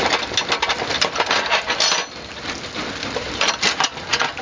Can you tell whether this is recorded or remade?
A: recorded